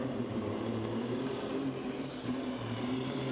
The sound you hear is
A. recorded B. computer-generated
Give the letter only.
B